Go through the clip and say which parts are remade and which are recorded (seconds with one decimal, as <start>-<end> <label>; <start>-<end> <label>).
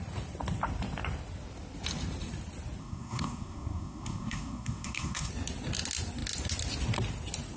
0.0-2.8 recorded; 2.8-5.3 remade; 5.3-7.6 recorded